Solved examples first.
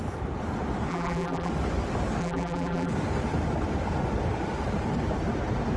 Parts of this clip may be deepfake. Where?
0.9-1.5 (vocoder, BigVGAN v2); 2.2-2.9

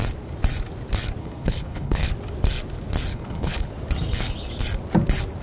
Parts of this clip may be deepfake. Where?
1.2-2.1 (codec, HILCodec); 3.1-3.7

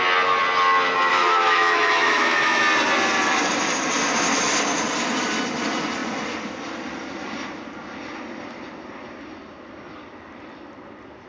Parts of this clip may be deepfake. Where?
1.1-2.6 (autoencoder, DAC-VAE)